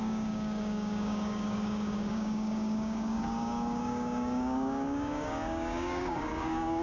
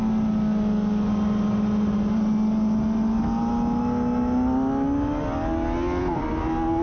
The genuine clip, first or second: second